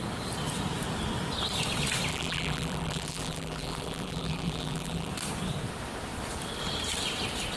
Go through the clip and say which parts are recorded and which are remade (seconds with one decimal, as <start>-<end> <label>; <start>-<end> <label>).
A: 0.0-2.1 recorded; 2.1-5.1 remade; 5.1-7.6 recorded